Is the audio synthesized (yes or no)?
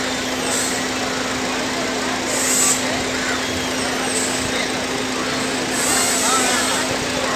no